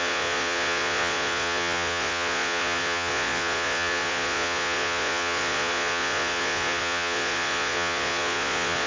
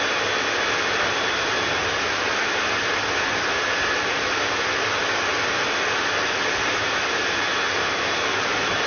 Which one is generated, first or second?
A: first